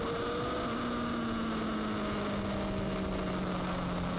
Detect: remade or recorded recorded